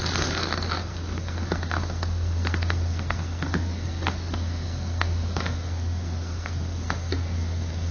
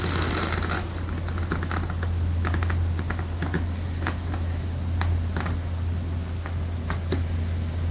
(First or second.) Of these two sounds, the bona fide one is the second